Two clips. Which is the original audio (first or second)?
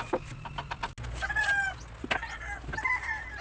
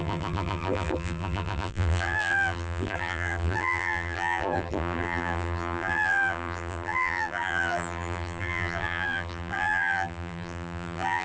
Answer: first